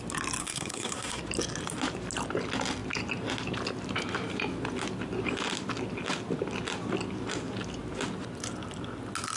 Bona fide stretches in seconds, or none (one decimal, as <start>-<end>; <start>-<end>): 0.0-0.4; 1.2-9.4